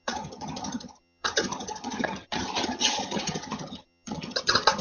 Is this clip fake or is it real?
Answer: fake